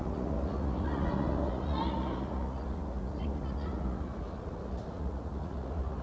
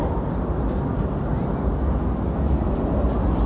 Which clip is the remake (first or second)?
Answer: first